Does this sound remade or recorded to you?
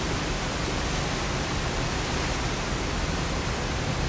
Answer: recorded